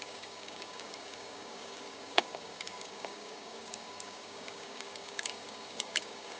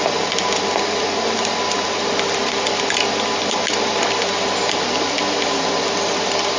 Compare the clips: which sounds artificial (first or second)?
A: first